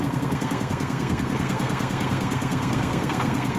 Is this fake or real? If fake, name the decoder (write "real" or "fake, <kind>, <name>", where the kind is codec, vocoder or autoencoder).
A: fake, codec, SNAC